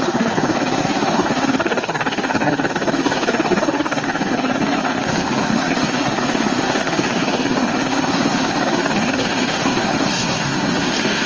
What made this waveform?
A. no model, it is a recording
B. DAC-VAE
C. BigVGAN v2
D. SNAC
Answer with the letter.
D